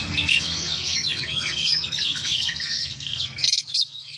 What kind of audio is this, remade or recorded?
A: remade